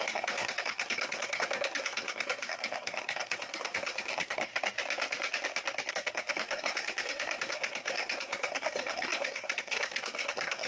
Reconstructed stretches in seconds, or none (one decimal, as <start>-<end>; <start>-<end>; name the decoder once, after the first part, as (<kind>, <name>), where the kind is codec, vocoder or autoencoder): 0.0-4.5 (codec, SNAC); 5.9-10.7